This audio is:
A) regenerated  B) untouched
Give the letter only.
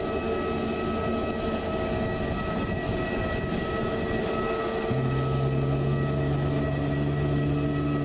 B